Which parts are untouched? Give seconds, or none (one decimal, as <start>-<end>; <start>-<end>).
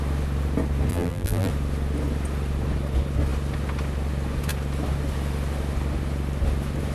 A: 0.0-0.9; 1.5-6.9